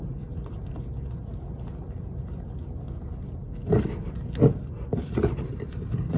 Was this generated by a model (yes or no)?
no